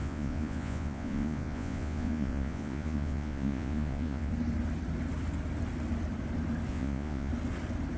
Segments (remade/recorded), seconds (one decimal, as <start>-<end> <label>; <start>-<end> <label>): 0.0-4.3 remade; 4.3-6.7 recorded; 6.7-7.3 remade; 7.3-8.0 recorded